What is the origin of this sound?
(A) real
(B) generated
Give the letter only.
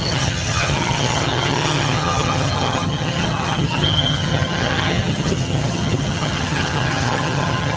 B